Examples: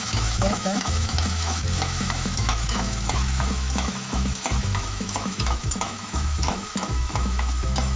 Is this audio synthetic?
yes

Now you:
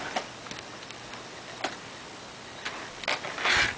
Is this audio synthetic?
no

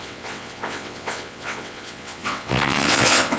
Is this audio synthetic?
yes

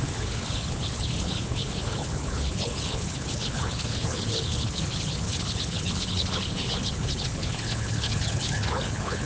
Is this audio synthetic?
yes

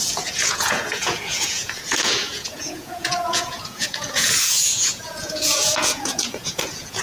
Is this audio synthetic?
yes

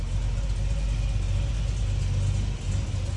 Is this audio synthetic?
no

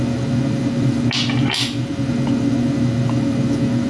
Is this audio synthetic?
no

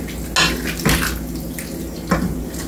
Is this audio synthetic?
no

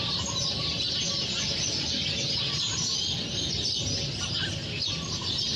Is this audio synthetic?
no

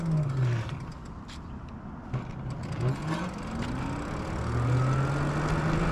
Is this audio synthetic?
no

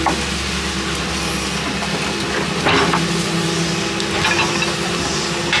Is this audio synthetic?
no